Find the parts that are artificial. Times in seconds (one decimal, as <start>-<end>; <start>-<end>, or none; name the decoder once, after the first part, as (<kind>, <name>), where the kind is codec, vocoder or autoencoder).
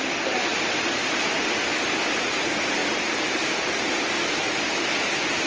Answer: none